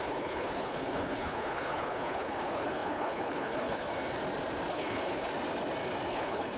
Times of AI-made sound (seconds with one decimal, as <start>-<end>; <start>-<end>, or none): 0.0-3.9; 4.7-5.3; 6.1-6.6